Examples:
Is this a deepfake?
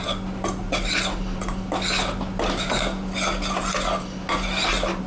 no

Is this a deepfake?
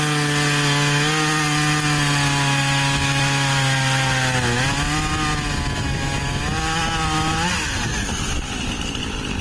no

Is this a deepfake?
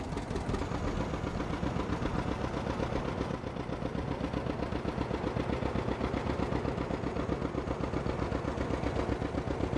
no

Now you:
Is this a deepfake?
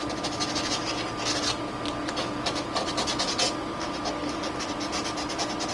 no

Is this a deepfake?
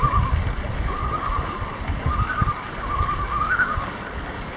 yes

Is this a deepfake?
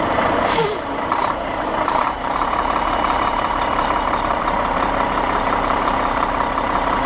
yes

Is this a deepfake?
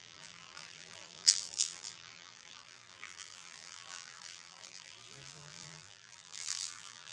yes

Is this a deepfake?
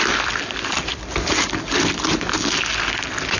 no